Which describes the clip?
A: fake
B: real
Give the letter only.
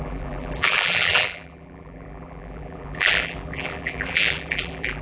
A